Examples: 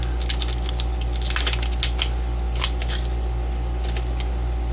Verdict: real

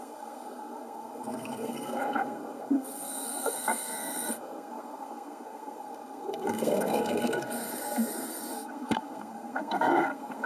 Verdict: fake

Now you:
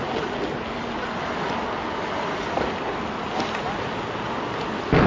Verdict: real